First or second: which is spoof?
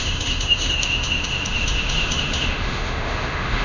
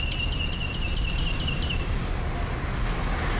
first